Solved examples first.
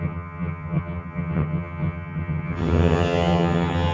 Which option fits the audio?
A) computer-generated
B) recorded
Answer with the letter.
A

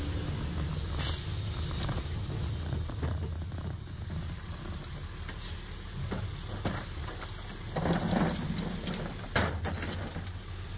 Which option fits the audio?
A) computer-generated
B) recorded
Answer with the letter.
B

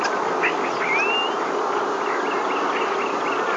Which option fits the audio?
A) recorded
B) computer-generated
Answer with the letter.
A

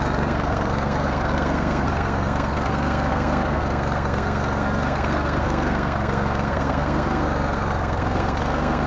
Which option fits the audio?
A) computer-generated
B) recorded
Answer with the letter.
A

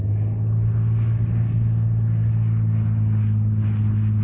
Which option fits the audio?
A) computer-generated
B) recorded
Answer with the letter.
B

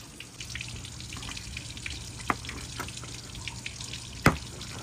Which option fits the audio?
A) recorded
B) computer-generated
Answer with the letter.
A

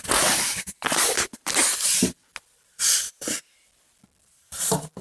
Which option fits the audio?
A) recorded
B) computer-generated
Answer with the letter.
A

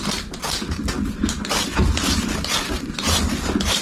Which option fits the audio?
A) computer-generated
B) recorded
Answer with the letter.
B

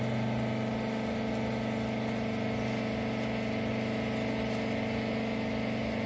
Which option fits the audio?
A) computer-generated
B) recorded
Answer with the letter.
B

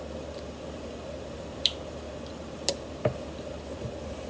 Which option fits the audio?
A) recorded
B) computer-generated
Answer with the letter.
A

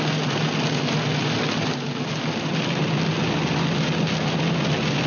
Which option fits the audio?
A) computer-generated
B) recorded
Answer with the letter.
B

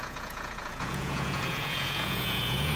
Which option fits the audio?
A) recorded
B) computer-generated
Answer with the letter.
B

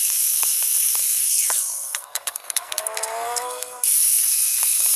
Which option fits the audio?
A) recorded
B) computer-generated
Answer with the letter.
B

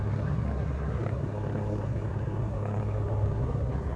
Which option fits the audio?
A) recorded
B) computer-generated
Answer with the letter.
B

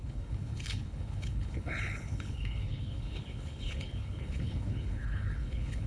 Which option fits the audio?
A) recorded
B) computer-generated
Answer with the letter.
B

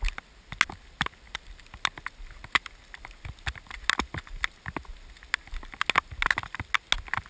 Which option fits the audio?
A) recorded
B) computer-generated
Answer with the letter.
A